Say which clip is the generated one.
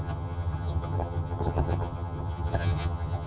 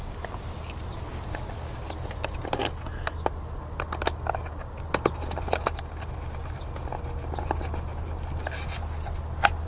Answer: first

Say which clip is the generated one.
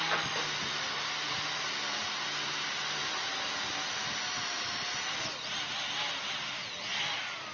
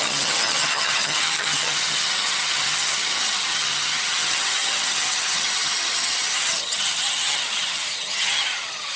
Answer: second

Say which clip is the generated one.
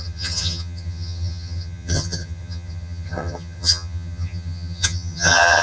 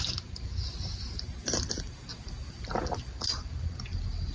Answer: first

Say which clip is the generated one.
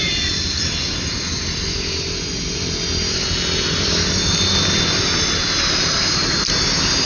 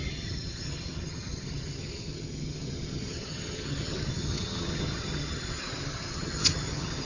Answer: second